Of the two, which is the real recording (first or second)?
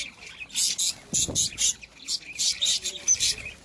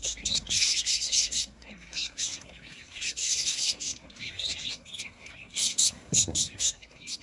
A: first